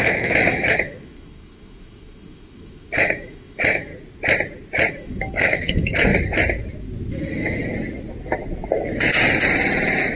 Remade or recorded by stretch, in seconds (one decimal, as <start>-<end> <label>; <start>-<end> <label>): 0.0-3.9 remade; 3.9-4.9 recorded; 4.9-6.1 remade; 6.1-7.1 recorded; 7.1-7.6 remade; 7.6-10.2 recorded